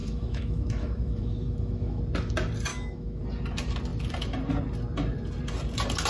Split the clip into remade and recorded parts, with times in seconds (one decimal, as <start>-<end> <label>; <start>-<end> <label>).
0.0-2.0 remade; 2.0-2.7 recorded; 2.7-3.2 remade; 3.2-6.1 recorded